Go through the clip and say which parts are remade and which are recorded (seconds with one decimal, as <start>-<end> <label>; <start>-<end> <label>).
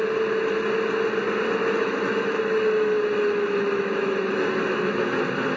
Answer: 0.0-1.6 recorded; 1.6-5.0 remade; 5.0-5.6 recorded